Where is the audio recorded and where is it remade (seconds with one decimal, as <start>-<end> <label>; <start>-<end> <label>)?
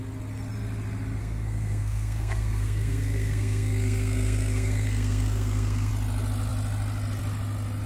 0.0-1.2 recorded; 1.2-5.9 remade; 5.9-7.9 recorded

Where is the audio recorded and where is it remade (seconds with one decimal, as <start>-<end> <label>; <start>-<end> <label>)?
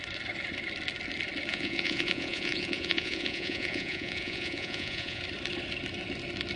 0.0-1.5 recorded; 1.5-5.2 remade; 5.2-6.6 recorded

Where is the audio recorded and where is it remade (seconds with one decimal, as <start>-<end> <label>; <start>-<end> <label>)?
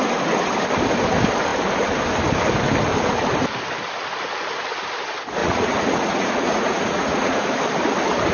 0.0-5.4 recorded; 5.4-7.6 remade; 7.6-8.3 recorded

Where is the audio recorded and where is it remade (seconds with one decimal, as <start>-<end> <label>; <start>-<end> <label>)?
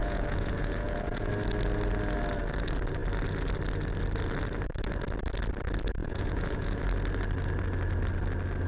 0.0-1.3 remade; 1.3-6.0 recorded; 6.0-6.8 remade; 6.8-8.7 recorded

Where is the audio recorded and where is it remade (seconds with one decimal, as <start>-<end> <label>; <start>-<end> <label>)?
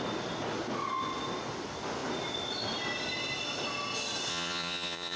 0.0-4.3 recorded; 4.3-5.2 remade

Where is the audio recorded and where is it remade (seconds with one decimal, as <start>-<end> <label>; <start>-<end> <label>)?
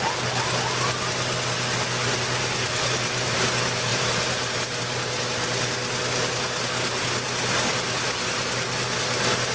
0.0-3.9 recorded; 3.9-4.8 remade; 4.8-9.5 recorded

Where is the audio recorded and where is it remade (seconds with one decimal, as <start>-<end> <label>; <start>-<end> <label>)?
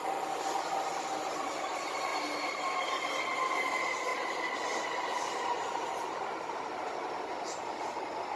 0.0-4.1 recorded; 4.1-6.4 remade; 6.4-8.4 recorded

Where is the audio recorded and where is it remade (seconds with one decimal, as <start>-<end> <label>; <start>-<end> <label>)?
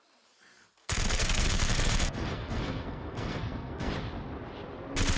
0.0-0.8 recorded; 0.8-3.9 remade; 3.9-5.2 recorded